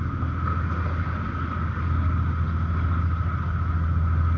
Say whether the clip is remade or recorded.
recorded